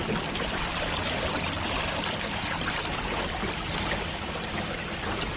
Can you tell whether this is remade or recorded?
recorded